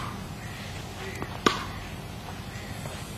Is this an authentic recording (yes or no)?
yes